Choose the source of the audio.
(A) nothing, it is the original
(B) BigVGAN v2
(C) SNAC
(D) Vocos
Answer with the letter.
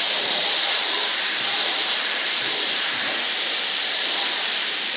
B